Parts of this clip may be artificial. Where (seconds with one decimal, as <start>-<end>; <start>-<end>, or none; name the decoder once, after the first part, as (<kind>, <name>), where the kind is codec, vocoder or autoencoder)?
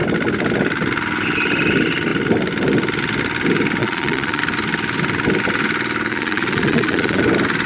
3.8-4.4 (vocoder, Vocos); 6.1-7.2